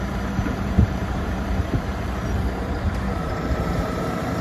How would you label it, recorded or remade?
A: remade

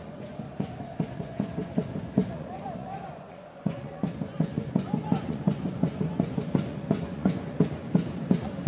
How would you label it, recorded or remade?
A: remade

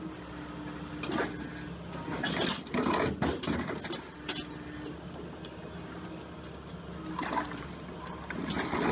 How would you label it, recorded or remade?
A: recorded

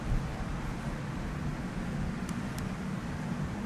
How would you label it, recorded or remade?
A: recorded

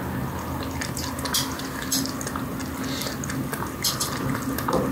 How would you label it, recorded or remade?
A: recorded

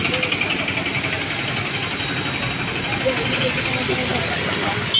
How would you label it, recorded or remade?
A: recorded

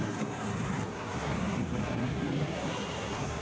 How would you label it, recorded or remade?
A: remade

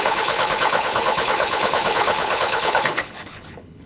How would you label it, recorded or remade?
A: remade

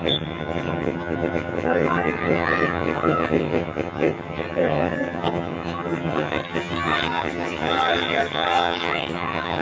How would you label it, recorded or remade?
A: remade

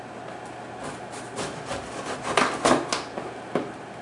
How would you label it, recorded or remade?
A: recorded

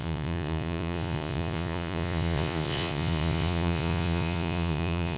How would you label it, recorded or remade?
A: remade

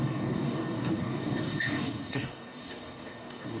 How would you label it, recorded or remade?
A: remade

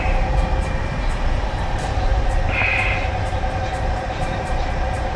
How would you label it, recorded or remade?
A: remade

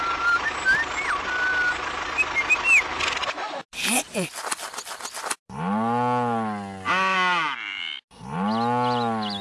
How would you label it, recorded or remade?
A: recorded